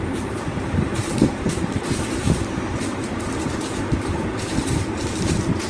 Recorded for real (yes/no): no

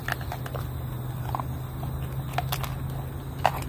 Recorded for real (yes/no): yes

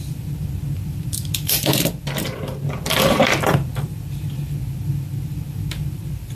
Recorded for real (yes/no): no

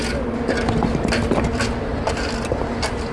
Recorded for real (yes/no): yes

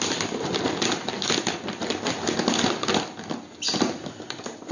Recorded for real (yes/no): yes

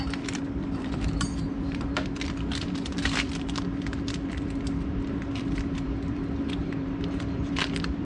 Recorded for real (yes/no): no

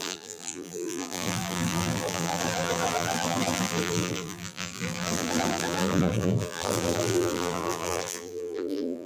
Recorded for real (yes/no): no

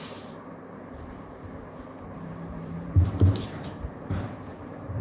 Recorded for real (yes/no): no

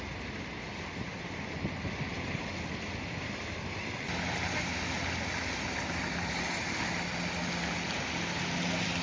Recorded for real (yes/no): yes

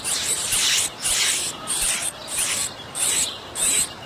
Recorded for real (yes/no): no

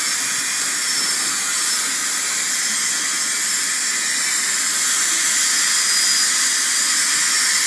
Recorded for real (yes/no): yes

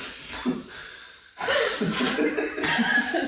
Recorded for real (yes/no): yes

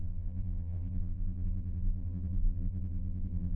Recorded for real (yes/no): no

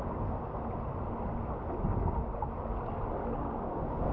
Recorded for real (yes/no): yes